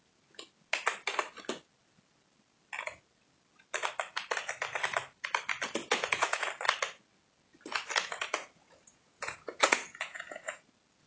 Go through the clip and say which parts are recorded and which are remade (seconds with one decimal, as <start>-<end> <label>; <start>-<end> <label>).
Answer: 0.0-5.8 recorded; 5.8-6.5 remade; 6.5-8.9 recorded; 8.9-10.6 remade; 10.6-11.1 recorded